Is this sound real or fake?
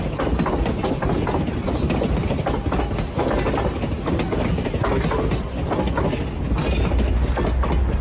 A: real